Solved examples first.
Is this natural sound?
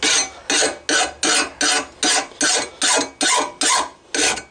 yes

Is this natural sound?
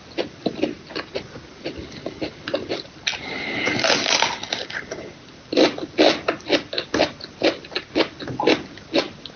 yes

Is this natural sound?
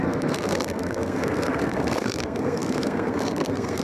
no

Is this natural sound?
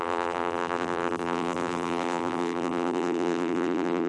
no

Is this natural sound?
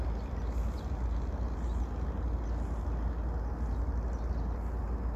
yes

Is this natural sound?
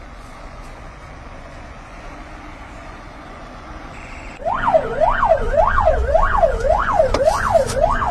no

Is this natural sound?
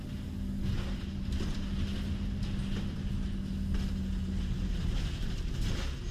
yes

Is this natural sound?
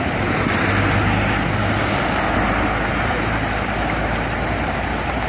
yes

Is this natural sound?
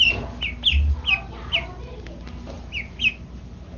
yes